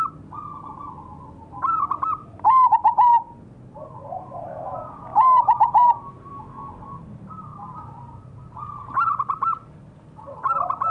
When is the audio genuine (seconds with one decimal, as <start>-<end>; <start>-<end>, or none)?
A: 0.0-5.1; 6.3-7.5; 8.4-10.9